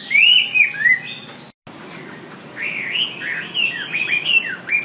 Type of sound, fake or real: real